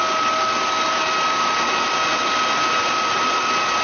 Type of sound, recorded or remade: recorded